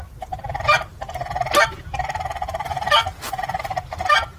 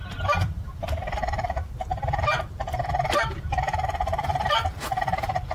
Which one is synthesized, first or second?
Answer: second